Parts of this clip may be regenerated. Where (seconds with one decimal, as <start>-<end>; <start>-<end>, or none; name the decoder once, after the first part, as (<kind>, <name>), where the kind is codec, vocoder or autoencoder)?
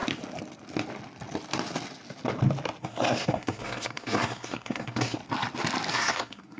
2.8-5.2 (codec, SNAC); 5.9-6.6